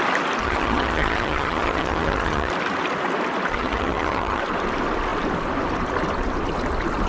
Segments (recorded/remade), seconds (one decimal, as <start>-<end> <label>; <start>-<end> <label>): 0.0-0.4 recorded; 0.4-2.5 remade; 2.5-3.5 recorded; 3.5-4.4 remade; 4.4-7.1 recorded